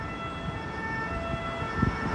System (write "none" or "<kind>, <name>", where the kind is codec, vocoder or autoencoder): none